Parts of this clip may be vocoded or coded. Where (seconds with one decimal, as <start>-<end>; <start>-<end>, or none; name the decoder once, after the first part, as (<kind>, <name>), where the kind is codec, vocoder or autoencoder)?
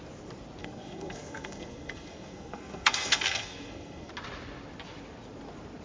0.6-4.1 (codec, SNAC)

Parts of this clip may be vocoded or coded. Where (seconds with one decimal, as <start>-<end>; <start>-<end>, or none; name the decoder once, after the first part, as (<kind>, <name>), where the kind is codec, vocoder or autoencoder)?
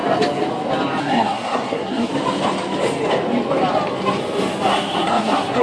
1.0-2.1 (codec, SNAC); 4.7-5.6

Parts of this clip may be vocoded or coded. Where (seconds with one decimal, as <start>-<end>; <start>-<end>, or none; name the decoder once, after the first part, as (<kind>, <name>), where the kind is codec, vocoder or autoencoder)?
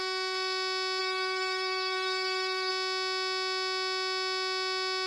1.0-2.7 (codec, SNAC)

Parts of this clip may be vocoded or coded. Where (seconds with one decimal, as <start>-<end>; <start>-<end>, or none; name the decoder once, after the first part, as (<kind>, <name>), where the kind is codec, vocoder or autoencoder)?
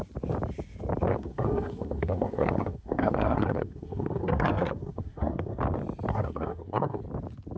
1.1-5.6 (codec, SNAC); 6.1-7.0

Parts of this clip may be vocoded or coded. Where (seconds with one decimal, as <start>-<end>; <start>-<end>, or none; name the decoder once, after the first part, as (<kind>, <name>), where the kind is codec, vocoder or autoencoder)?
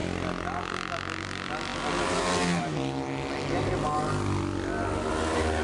none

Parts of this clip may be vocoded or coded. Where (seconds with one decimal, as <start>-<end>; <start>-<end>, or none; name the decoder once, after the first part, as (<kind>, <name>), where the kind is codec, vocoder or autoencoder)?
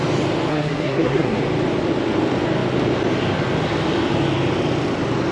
0.5-1.4 (codec, SNAC)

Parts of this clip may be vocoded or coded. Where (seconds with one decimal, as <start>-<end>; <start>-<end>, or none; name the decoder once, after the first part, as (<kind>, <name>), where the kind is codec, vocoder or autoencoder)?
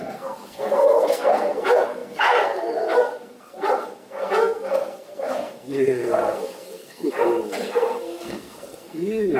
0.0-9.4 (codec, SNAC)